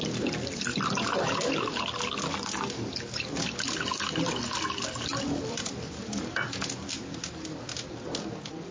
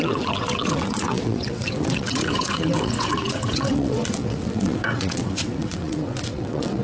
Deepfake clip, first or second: second